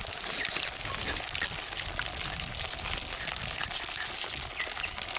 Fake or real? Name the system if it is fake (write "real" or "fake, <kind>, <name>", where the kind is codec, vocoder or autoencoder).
real